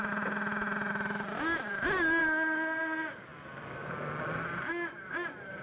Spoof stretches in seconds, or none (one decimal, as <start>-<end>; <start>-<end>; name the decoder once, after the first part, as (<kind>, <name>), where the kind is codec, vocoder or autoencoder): none